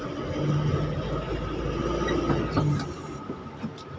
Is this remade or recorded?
recorded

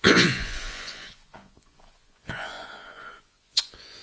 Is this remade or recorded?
remade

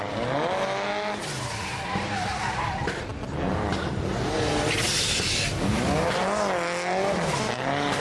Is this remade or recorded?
recorded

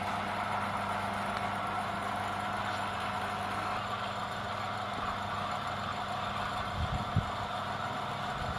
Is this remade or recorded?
recorded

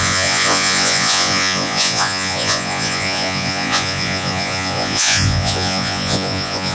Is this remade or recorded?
remade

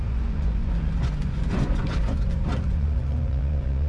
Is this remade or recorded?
remade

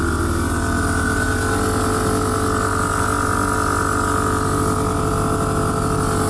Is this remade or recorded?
recorded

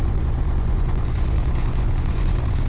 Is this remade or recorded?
remade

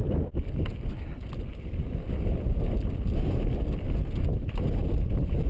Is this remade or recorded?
recorded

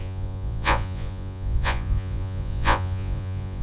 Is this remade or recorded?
remade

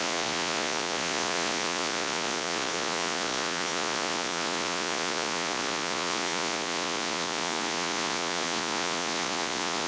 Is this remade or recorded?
remade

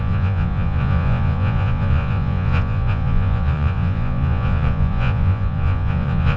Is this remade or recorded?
remade